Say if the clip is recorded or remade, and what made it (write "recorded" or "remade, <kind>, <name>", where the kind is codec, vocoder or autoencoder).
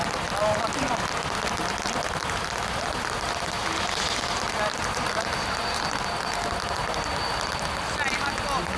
recorded